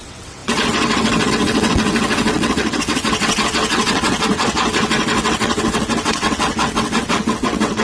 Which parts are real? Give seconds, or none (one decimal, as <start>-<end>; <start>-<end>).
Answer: none